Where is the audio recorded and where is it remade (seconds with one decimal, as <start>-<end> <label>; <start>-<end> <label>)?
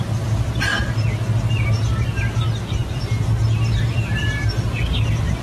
0.0-5.4 recorded